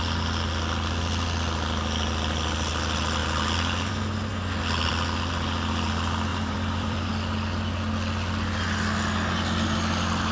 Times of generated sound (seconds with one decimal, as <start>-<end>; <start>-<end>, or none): 6.3-7.1